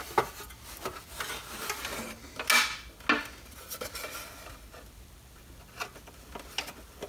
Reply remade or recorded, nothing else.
recorded